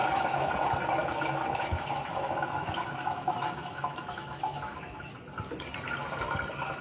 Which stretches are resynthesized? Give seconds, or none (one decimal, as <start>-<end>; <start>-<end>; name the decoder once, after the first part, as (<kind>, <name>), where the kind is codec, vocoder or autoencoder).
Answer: 0.0-0.5 (autoencoder, DAC-VAE); 1.0-5.1